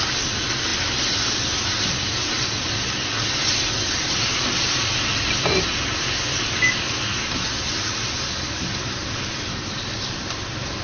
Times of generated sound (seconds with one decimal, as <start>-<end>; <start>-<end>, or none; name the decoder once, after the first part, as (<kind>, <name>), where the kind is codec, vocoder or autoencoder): none